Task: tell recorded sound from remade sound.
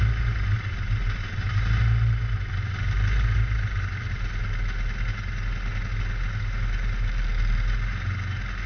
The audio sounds recorded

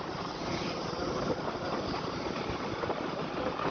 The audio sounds remade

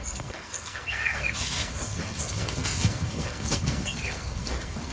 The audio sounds remade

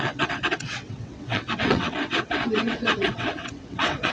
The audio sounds remade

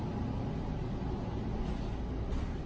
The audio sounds recorded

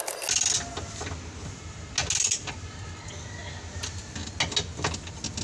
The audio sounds recorded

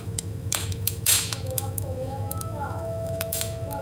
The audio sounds remade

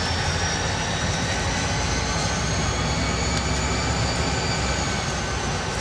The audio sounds recorded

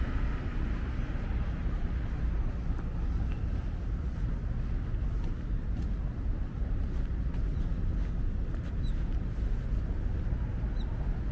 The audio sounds recorded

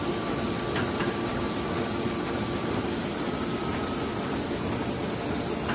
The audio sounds recorded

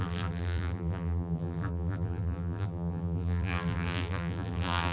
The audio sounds remade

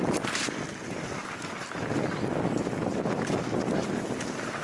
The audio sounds recorded